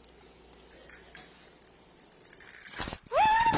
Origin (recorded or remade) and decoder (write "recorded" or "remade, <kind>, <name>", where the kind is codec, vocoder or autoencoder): recorded